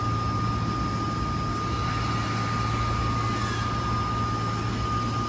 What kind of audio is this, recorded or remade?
recorded